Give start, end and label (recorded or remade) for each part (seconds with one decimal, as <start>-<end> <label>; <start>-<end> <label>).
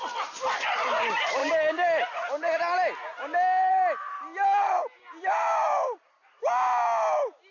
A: 0.0-5.6 recorded; 5.6-6.5 remade; 6.5-7.5 recorded